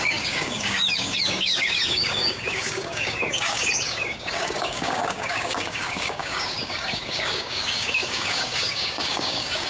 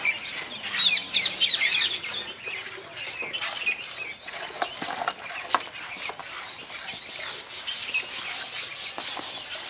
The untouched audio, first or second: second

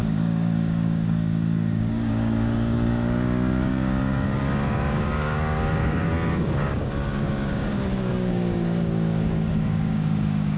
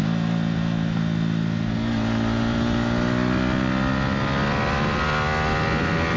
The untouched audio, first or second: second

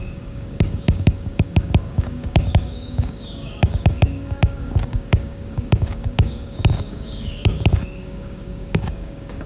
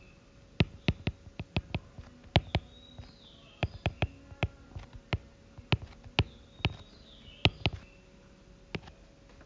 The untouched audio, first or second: second